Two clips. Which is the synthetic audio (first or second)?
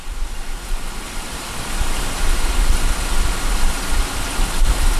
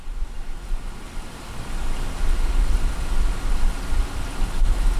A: first